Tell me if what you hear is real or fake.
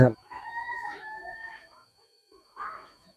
fake